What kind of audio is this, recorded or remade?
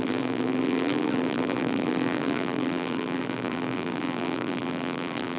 remade